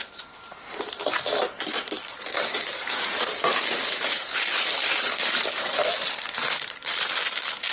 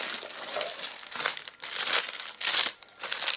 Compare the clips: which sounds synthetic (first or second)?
first